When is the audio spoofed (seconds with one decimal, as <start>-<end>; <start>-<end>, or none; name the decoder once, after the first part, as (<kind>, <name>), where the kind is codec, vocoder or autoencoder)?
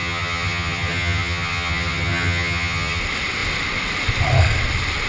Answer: 0.0-3.0 (vocoder, HiFi-GAN)